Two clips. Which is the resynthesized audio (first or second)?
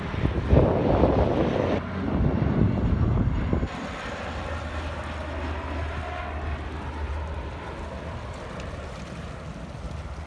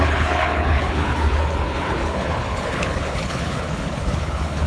second